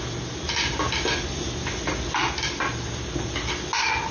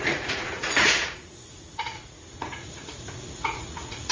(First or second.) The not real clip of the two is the second